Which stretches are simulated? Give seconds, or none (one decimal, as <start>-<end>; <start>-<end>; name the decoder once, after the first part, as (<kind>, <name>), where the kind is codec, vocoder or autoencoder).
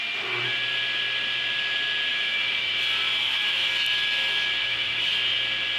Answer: 2.1-2.7 (autoencoder, DAC-VAE); 3.2-3.7; 4.6-5.1